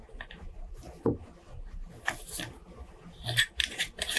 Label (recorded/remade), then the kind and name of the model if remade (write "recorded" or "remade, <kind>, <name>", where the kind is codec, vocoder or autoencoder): recorded